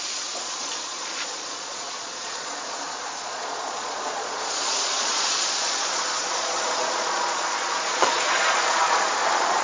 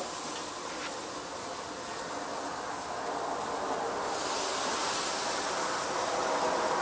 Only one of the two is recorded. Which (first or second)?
second